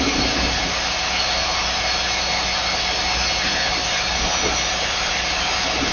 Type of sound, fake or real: real